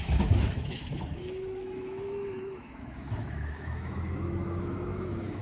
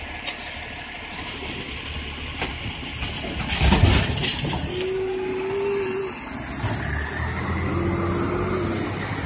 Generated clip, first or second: first